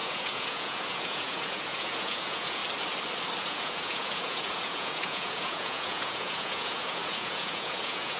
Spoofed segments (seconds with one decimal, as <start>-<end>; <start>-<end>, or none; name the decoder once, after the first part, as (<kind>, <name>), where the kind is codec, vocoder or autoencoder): 0.0-2.6 (vocoder, Vocos); 3.4-8.2